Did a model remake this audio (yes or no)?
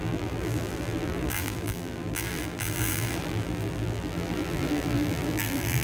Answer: yes